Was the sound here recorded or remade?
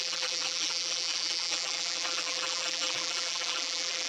remade